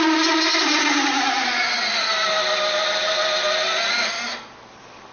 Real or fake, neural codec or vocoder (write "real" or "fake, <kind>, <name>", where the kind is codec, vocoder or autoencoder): real